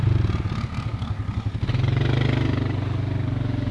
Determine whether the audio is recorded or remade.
recorded